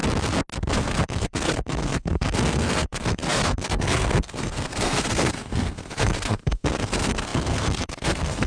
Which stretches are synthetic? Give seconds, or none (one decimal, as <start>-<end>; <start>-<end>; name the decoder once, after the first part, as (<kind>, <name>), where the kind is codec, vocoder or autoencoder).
0.7-8.5 (codec, SNAC)